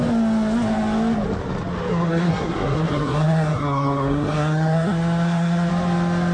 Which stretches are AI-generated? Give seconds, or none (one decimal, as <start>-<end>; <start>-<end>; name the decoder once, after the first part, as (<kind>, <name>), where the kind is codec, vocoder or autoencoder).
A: 1.9-5.7 (codec, SNAC)